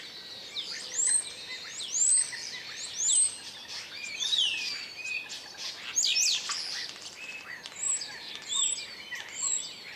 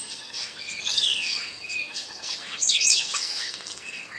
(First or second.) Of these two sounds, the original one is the first